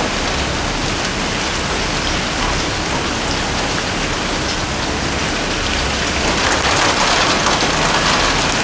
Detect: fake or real real